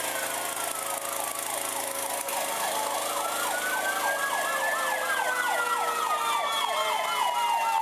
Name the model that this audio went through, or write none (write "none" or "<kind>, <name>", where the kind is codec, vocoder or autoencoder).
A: none